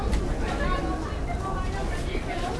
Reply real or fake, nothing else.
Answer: real